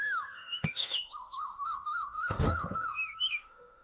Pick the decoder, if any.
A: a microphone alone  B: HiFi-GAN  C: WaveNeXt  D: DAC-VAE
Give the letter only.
D